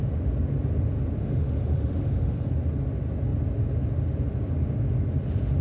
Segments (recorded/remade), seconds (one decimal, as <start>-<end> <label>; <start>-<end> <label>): 0.0-1.2 recorded; 1.2-2.5 remade; 2.5-5.6 recorded